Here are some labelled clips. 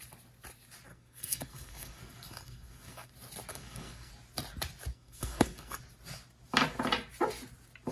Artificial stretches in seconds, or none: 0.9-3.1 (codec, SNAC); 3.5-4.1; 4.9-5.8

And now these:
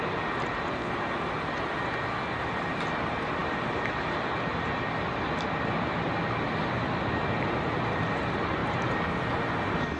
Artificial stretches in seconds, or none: none

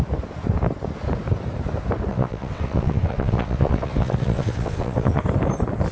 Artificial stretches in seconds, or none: 2.1-5.2 (vocoder, WaveNeXt)

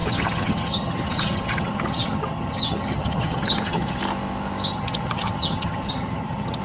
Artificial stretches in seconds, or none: 0.0-4.0 (vocoder, HiFi-GAN); 4.7-6.6